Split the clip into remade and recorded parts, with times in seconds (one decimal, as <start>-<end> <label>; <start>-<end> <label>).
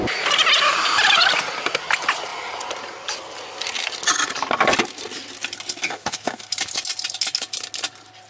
0.0-5.8 recorded; 5.8-6.5 remade; 6.5-8.3 recorded